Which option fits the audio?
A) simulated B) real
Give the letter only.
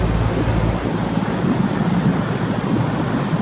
B